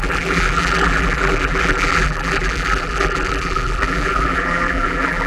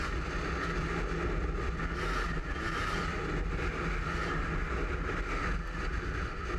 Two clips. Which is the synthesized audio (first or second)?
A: first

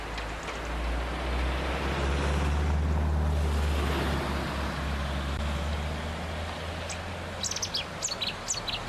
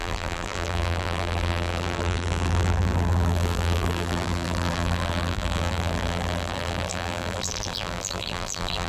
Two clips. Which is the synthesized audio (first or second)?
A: second